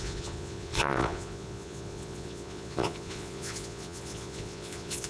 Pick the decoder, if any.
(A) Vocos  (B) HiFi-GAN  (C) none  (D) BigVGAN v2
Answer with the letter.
A